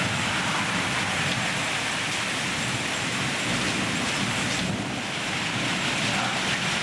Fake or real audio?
real